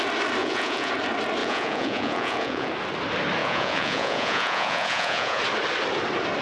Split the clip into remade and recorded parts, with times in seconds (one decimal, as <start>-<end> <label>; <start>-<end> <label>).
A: 0.0-0.4 recorded; 0.4-0.9 remade; 0.9-1.4 recorded; 1.4-2.7 remade; 2.7-3.4 recorded; 3.4-5.4 remade; 5.4-6.4 recorded